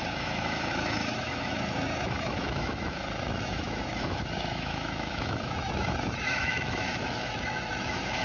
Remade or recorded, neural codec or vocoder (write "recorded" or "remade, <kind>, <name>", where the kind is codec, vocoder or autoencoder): remade, autoencoder, DAC-VAE